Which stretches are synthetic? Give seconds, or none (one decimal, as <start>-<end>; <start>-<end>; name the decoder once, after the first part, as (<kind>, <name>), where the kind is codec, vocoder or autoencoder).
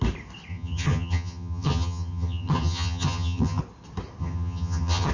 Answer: 0.5-3.6 (vocoder, HiFi-GAN); 4.2-5.1